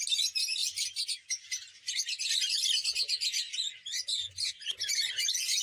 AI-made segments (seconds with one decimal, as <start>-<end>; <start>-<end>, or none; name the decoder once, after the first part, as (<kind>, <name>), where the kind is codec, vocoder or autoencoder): 0.6-1.1 (vocoder, BigVGAN v2)